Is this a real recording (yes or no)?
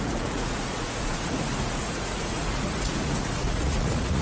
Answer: no